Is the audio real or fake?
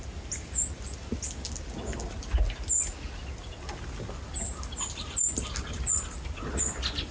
real